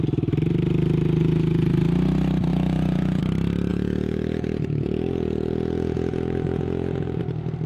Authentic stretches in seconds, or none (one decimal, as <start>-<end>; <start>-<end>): 0.0-1.2; 1.7-2.5; 3.2-3.7; 7.2-7.7